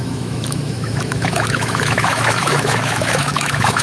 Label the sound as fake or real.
fake